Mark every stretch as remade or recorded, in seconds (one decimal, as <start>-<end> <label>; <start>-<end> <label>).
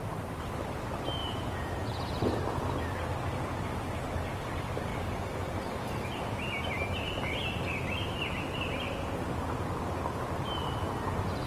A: 0.0-1.2 recorded; 1.2-2.3 remade; 2.3-11.5 recorded